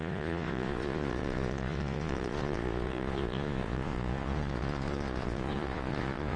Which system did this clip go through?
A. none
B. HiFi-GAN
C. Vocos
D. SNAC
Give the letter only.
C